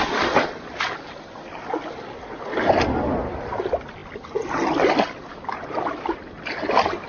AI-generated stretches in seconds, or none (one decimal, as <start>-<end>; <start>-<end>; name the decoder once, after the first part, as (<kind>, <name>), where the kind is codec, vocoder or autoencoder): none